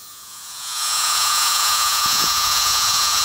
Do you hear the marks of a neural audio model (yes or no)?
yes